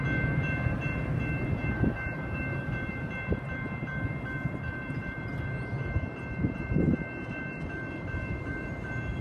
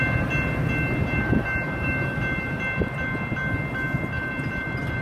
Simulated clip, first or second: first